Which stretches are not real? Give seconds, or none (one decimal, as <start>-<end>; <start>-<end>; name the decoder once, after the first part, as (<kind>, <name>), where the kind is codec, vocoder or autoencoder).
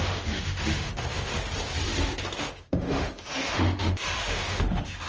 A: 0.0-1.3 (autoencoder, DAC-VAE); 2.4-5.1